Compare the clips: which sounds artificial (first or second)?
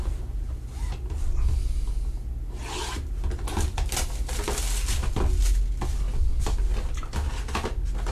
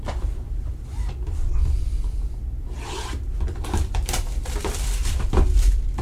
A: second